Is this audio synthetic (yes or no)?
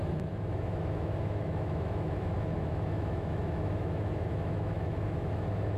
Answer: yes